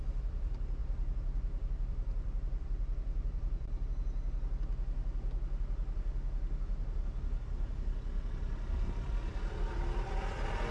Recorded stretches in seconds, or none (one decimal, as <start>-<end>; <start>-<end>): 0.0-0.8; 3.9-10.7